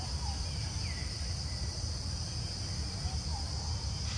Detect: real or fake real